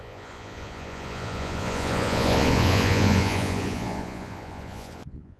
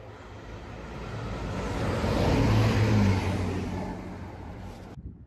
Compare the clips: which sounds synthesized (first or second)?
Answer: first